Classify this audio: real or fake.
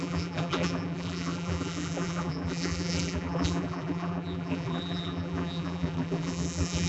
fake